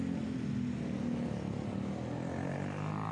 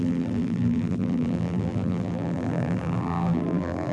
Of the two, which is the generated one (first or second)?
second